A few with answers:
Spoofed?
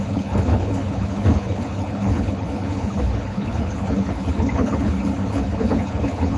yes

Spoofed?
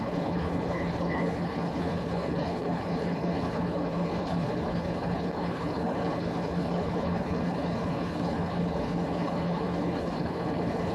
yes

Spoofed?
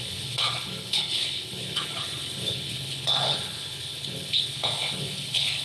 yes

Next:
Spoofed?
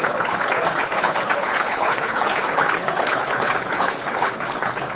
yes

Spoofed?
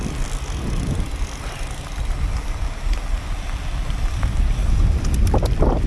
no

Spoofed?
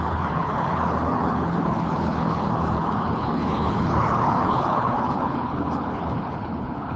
yes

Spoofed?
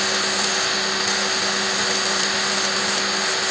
no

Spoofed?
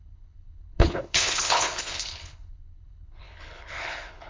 yes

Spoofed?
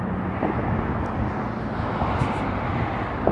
no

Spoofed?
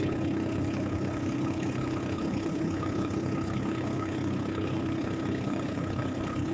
yes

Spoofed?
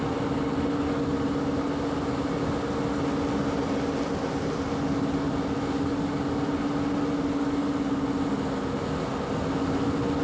no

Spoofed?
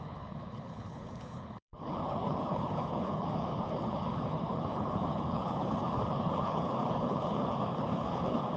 yes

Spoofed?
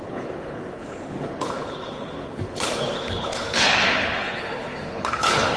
yes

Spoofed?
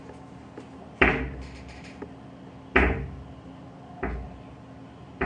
no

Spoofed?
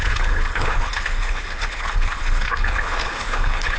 yes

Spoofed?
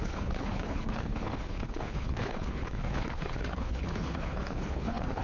yes